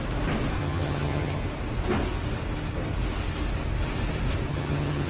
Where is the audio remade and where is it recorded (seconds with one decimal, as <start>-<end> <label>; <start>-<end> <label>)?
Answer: 0.0-0.6 recorded; 0.6-1.4 remade; 1.4-4.5 recorded; 4.5-5.1 remade